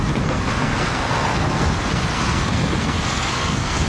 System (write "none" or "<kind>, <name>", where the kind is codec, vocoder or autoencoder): codec, SNAC